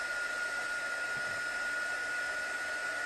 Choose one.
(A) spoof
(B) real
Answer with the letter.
B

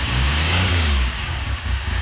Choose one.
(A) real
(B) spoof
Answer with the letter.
B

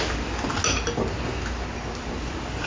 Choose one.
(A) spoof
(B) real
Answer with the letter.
B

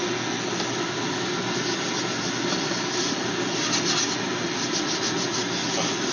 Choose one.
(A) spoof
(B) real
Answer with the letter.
B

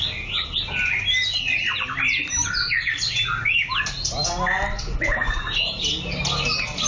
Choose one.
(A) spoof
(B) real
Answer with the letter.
B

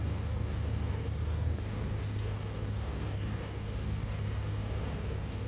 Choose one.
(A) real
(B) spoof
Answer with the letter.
B